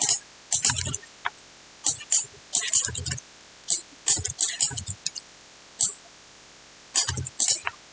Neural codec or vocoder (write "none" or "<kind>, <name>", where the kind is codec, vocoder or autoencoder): none